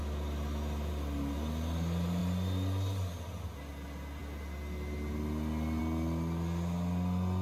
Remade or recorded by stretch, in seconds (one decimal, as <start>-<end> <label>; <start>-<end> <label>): 0.0-7.4 recorded